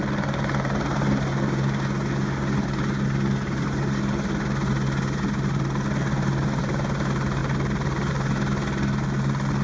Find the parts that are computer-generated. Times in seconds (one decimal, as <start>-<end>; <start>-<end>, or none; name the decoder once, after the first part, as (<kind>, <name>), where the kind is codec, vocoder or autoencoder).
none